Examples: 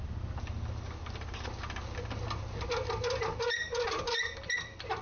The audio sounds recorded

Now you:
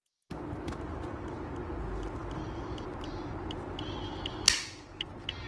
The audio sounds recorded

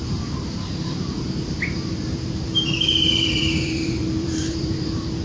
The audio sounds remade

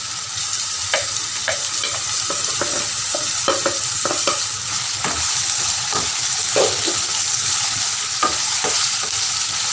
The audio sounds recorded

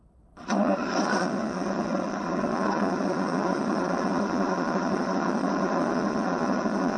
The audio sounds remade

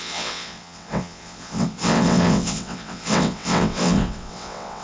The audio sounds remade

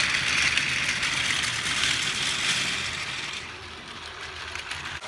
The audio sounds recorded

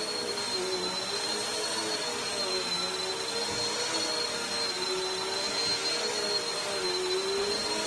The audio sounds recorded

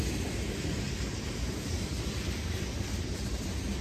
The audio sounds recorded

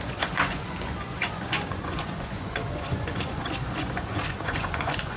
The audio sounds remade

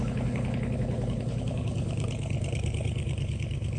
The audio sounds remade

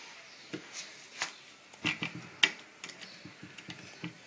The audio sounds recorded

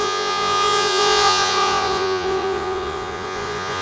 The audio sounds remade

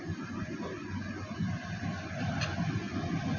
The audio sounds recorded